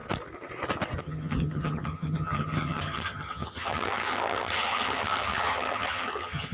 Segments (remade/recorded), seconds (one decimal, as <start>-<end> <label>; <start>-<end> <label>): 0.0-1.0 recorded; 1.0-6.5 remade